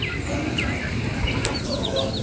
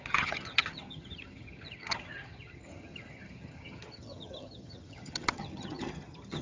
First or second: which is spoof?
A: second